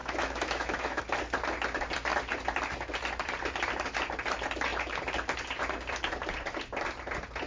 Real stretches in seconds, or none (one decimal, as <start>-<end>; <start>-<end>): 1.0-7.5